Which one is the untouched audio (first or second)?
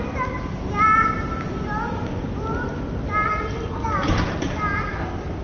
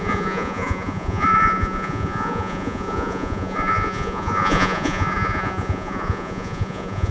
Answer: first